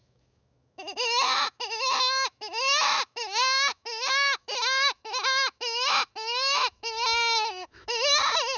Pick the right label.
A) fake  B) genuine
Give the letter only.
A